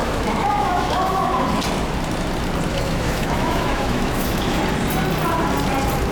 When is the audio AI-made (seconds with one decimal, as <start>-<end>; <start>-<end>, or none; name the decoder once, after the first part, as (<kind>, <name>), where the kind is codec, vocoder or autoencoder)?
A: 0.0-1.5 (autoencoder, DAC-VAE); 2.7-4.6

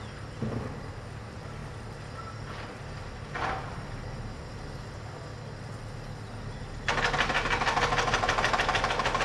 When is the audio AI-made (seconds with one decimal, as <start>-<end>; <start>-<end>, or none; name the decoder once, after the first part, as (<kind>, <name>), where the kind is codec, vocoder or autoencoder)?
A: none

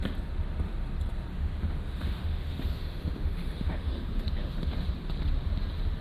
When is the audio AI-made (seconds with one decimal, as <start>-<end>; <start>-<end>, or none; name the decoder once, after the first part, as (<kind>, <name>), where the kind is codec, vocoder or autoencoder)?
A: 1.3-4.9 (autoencoder, DAC-VAE)

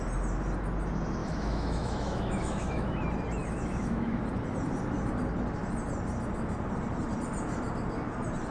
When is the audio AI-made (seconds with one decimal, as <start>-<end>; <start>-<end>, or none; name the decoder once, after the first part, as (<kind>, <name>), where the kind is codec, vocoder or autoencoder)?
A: 1.2-3.0 (autoencoder, DAC-VAE); 3.4-4.2

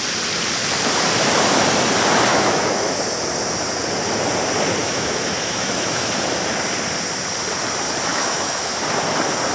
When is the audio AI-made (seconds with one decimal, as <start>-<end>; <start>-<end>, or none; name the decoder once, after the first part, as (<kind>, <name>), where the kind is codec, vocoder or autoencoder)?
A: 2.3-3.0 (autoencoder, DAC-VAE); 4.8-6.1; 8.1-8.7

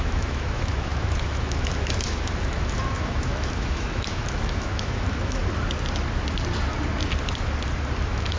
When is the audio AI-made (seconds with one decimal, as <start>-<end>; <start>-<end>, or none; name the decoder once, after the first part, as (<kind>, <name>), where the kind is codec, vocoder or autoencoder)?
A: 0.0-5.4 (autoencoder, DAC-VAE); 8.0-8.4